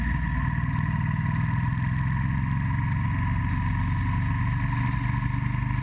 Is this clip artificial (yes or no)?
no